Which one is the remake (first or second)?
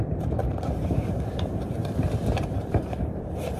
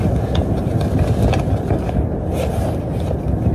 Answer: first